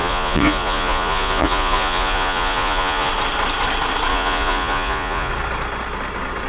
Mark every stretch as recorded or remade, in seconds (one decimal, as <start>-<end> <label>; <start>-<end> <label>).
0.0-3.1 remade; 3.1-4.1 recorded; 4.1-5.3 remade; 5.3-6.5 recorded